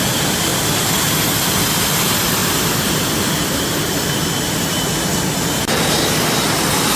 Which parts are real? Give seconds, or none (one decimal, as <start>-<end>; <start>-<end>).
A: 0.0-7.0